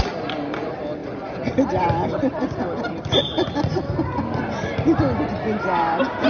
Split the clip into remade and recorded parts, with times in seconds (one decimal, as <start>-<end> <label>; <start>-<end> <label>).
0.0-6.3 recorded